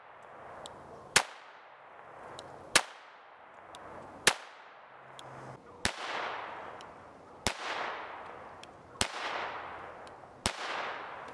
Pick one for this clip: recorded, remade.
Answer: recorded